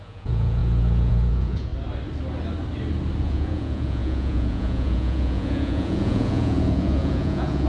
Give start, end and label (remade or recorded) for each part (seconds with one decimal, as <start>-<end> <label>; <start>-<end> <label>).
0.0-1.7 remade; 1.7-3.2 recorded; 3.2-7.7 remade